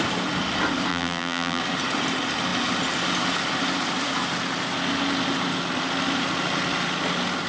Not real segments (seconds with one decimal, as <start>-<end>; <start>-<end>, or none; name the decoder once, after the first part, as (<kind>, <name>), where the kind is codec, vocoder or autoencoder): 0.9-1.6 (vocoder, BigVGAN v2)